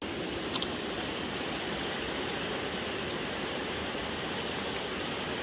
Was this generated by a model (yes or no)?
no